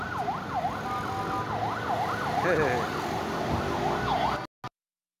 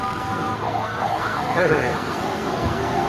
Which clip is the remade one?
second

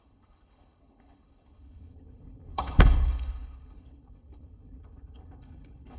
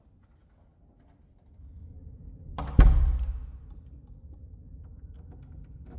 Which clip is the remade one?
first